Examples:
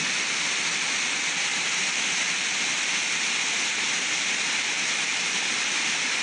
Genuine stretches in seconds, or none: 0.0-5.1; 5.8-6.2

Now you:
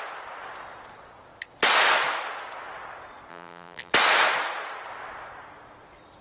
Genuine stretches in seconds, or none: 0.0-3.3; 3.9-6.2